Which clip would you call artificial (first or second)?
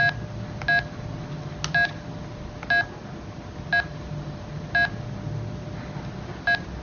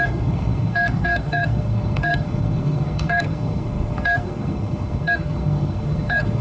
second